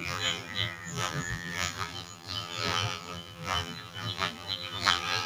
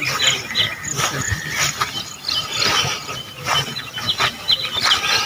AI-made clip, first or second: first